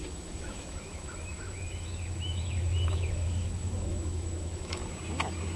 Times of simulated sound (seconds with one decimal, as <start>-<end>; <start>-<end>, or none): 0.0-4.8